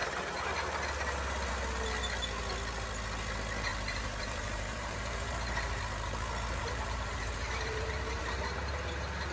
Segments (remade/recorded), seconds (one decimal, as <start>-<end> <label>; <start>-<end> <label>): 0.0-3.7 recorded; 3.7-5.8 remade; 5.8-6.6 recorded; 6.6-8.9 remade; 8.9-9.3 recorded